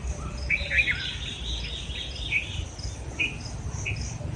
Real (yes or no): yes